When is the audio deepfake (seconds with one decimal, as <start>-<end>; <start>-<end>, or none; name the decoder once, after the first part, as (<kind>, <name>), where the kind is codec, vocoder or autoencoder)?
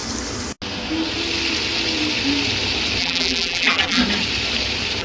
3.0-4.0 (vocoder, BigVGAN v2)